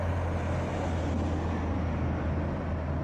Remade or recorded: recorded